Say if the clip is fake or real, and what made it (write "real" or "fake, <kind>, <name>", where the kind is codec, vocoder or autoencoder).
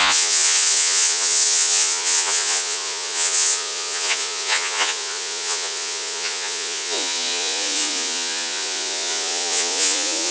fake, vocoder, Vocos